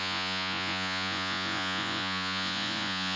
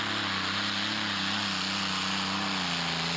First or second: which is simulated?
first